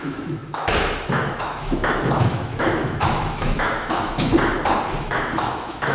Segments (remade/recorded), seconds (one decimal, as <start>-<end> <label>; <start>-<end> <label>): 0.0-4.3 remade; 4.3-5.0 recorded; 5.0-5.9 remade